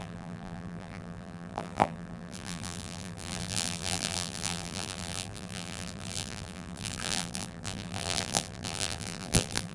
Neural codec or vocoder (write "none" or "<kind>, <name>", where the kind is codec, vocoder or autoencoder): vocoder, BigVGAN v2